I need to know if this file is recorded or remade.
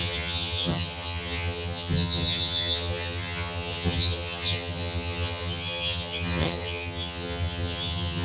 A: remade